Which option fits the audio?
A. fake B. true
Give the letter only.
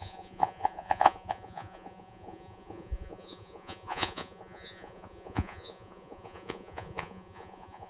A